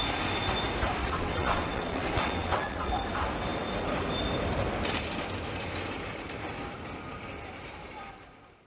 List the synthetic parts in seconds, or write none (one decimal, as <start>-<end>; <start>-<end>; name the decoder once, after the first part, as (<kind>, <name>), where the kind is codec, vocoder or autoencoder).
1.0-2.9 (vocoder, WaveNeXt)

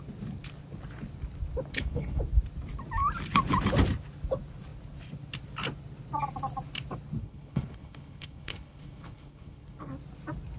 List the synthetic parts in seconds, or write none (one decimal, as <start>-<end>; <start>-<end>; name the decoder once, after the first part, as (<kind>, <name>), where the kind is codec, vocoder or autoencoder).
1.7-2.2 (codec, HILCodec); 7.2-9.9

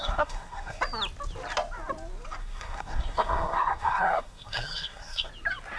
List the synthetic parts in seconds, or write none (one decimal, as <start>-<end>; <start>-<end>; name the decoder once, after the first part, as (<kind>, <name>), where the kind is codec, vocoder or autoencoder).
0.0-0.8 (codec, SNAC); 2.4-5.3

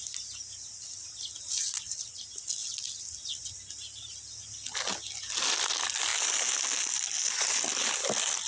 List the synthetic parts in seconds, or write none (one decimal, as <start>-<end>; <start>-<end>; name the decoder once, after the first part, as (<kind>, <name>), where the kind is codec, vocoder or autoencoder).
none

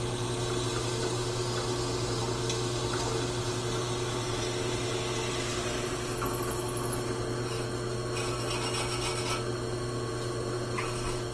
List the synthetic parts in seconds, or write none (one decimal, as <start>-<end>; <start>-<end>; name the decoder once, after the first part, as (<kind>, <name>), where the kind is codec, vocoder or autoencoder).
none

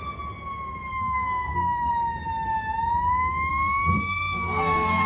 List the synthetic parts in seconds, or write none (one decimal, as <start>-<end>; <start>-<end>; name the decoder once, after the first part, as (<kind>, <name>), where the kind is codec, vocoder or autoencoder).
0.9-1.9 (codec, SNAC); 3.5-5.1

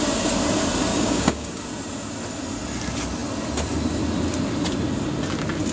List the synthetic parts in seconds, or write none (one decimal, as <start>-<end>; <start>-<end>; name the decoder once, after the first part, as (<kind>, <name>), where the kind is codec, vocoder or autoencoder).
0.9-1.6 (codec, DAC)

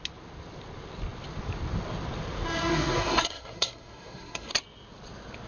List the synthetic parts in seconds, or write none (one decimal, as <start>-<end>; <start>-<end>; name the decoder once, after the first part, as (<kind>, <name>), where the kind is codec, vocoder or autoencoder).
2.7-4.5 (codec, SNAC)